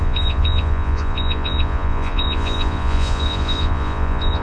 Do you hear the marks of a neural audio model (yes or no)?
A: yes